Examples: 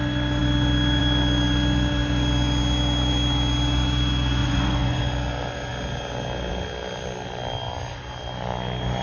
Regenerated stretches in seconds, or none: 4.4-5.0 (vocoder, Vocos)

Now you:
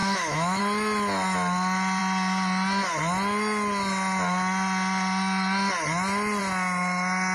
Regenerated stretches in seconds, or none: 0.0-0.6 (autoencoder, DAC-VAE)

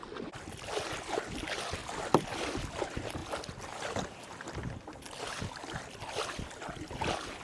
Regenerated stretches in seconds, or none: none

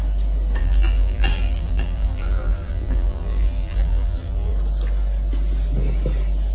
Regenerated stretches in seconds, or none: 0.6-4.5 (vocoder, BigVGAN v2)

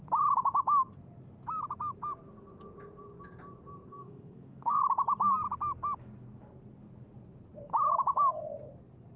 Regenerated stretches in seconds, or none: 3.9-4.8 (codec, SNAC)

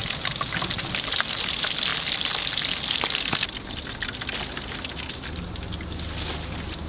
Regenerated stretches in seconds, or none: none

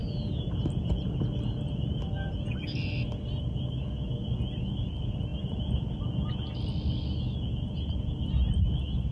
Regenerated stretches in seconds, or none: none

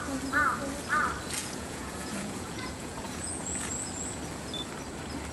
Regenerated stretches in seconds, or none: 1.4-3.7 (vocoder, Vocos)